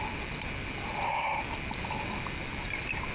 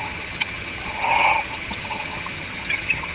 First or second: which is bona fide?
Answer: first